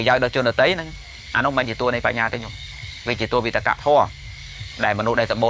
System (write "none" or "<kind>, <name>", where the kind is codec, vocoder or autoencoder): codec, DAC